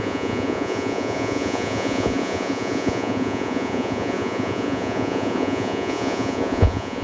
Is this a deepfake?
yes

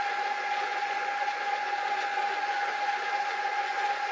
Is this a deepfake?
yes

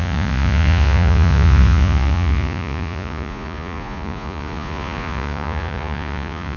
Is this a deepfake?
yes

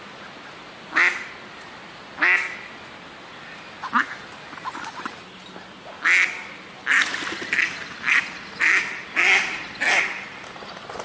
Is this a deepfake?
no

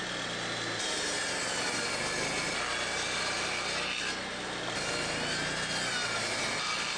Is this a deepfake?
no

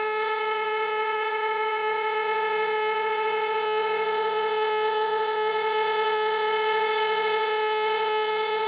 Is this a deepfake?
yes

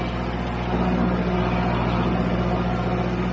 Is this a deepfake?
no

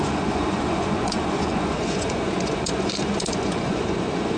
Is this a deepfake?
yes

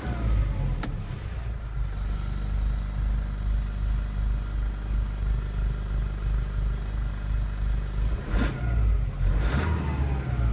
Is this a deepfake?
no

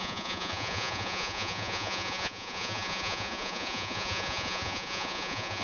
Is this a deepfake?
yes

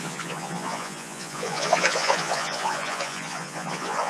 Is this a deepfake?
yes